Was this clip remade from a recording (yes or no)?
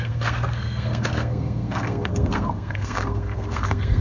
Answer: yes